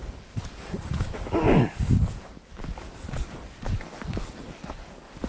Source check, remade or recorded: remade